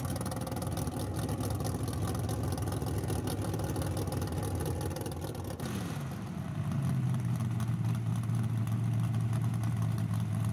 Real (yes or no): yes